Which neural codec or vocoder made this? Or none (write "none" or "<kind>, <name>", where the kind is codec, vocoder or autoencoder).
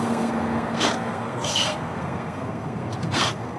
codec, SNAC